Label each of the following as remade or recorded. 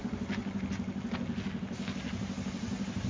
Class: recorded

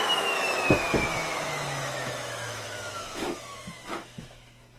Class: remade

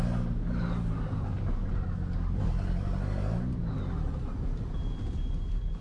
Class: recorded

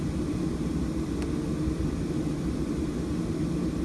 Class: recorded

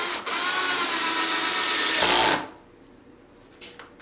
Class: recorded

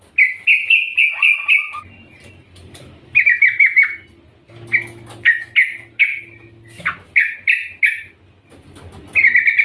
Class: recorded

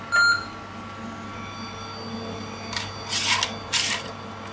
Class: recorded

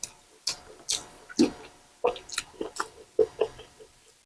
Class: recorded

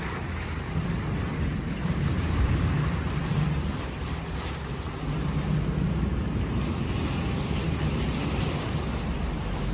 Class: remade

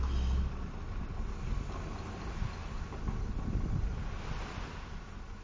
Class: recorded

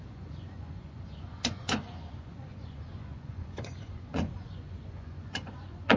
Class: remade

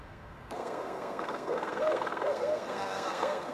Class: remade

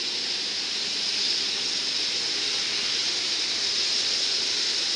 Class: recorded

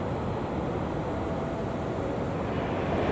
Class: recorded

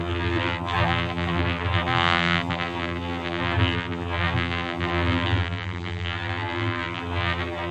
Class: remade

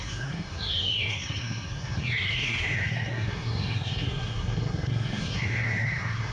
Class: remade